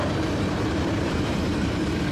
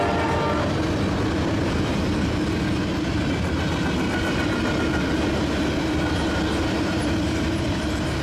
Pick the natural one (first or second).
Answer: second